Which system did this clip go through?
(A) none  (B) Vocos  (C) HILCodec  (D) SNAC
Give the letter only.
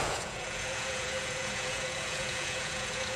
B